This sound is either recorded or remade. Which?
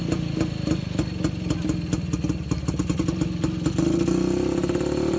recorded